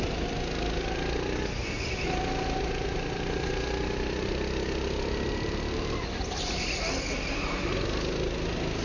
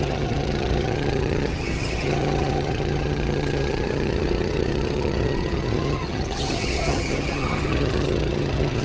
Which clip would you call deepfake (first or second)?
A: second